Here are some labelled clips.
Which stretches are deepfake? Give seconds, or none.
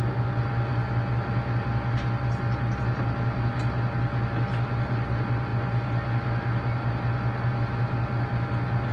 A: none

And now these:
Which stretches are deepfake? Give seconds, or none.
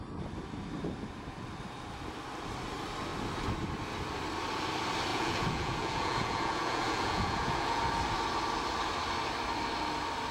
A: 5.1-7.8 (vocoder, Vocos)